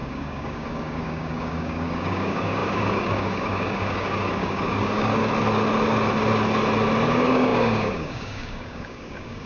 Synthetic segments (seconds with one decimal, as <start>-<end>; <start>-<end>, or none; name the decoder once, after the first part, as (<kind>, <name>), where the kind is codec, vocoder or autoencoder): 0.0-5.2 (codec, DAC); 7.0-9.5